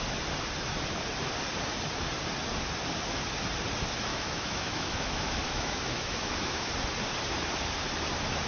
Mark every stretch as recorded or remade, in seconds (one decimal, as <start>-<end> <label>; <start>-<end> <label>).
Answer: 0.0-4.1 recorded; 4.1-6.7 remade; 6.7-8.5 recorded